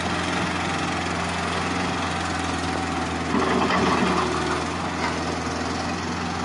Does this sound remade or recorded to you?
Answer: recorded